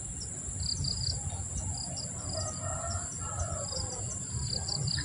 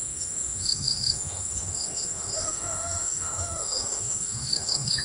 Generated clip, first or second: second